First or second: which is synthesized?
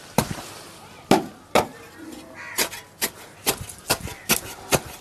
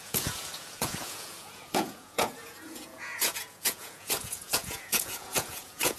second